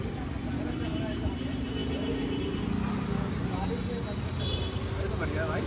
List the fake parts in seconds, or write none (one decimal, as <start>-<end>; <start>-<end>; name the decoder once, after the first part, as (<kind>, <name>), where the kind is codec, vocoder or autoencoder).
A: none